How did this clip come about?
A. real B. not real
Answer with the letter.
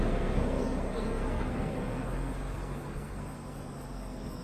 B